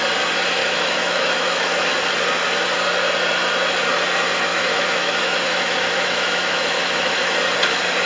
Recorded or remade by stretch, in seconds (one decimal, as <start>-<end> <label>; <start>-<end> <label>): 0.0-0.6 recorded; 0.6-1.9 remade; 1.9-4.5 recorded; 4.5-7.3 remade; 7.3-8.1 recorded